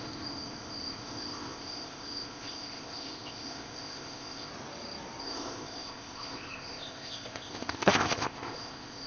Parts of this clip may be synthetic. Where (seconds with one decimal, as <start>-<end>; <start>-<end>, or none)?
0.0-4.5; 5.2-9.1